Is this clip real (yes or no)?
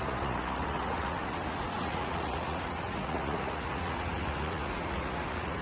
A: no